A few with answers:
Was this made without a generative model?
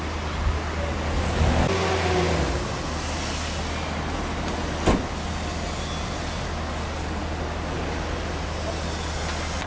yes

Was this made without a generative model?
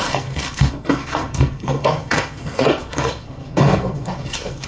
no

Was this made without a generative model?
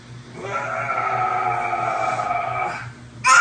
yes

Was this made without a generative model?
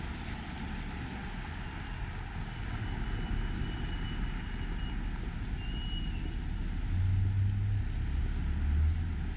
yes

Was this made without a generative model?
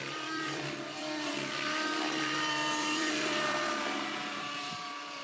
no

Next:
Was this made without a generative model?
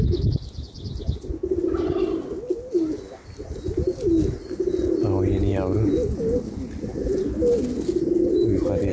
yes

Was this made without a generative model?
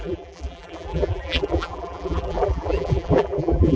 no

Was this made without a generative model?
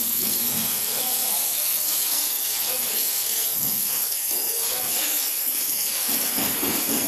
no